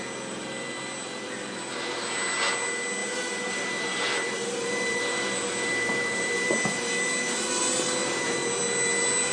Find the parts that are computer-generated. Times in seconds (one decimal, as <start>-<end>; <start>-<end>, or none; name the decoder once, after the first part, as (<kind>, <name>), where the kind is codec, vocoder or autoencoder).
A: 3.0-6.5 (vocoder, BigVGAN v2); 8.0-8.6